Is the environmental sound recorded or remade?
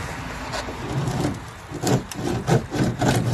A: recorded